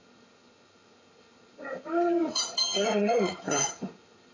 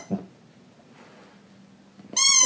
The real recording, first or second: second